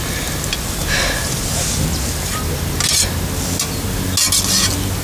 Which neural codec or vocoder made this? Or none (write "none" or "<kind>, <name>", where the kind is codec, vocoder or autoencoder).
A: none